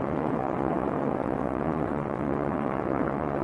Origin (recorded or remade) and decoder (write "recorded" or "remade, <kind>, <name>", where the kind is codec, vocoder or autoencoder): remade, vocoder, WaveNeXt